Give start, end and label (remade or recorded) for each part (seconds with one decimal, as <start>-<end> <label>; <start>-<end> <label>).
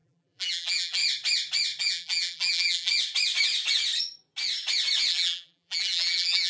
0.0-1.0 remade; 1.0-1.8 recorded; 1.8-2.9 remade; 2.9-5.1 recorded; 5.1-6.5 remade